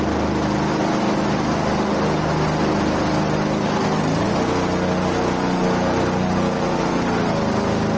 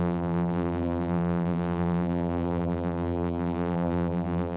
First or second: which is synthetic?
second